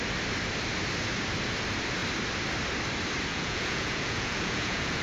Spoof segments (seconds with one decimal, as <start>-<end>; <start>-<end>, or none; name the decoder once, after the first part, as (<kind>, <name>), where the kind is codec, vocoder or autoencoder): 3.3-5.0 (vocoder, Vocos)